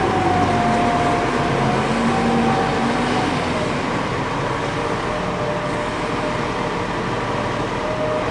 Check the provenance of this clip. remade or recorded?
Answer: recorded